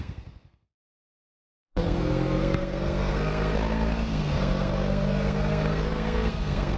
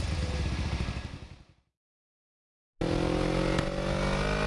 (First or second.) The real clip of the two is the second